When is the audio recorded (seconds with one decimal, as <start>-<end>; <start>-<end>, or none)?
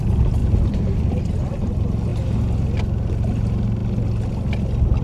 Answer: 0.0-5.0